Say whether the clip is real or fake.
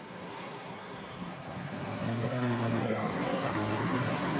fake